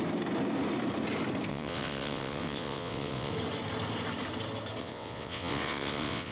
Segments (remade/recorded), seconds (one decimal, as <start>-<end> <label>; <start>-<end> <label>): 0.0-1.5 recorded; 1.5-3.3 remade; 3.3-4.8 recorded; 4.8-6.3 remade